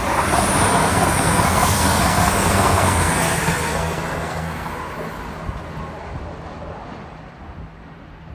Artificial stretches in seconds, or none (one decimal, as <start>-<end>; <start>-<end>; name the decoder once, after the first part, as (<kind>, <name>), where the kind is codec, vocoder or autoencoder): 0.8-4.7 (codec, SNAC)